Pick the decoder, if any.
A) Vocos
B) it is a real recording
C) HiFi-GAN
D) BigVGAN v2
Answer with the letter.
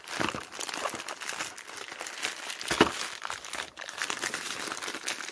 B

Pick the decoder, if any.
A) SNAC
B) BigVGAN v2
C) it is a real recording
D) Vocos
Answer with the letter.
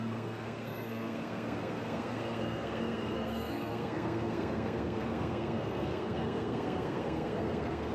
A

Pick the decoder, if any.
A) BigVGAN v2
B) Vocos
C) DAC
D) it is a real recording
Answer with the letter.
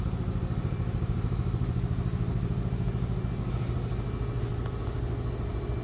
D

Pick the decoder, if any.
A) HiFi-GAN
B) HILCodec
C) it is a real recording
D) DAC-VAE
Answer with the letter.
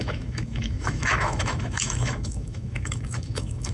D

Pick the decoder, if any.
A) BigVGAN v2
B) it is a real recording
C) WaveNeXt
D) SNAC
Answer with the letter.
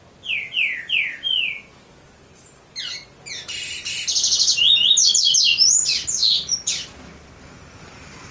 B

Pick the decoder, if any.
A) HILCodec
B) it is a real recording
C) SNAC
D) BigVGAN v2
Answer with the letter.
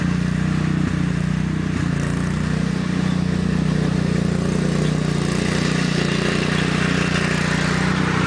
B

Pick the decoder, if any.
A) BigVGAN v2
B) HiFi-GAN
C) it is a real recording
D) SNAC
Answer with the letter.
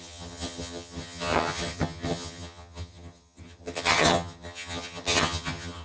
B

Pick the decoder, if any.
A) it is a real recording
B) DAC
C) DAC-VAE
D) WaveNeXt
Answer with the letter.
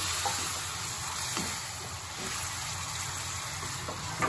A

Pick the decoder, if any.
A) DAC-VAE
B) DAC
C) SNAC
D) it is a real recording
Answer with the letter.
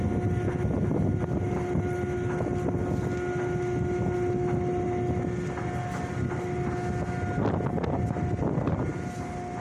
D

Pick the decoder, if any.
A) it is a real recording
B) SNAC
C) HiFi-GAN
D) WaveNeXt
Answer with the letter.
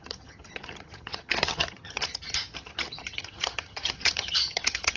C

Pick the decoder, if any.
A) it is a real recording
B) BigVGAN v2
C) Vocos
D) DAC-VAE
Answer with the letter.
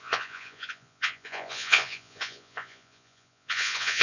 C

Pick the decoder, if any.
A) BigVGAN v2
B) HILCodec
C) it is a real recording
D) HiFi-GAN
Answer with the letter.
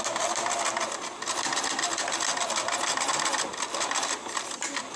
C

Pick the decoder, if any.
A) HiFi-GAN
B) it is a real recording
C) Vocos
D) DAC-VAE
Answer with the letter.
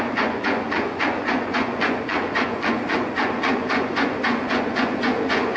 C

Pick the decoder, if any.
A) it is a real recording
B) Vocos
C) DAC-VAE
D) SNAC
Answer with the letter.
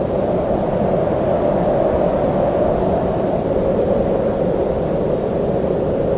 A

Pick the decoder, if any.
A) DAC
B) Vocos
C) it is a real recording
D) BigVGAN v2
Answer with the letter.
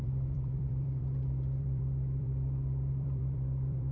D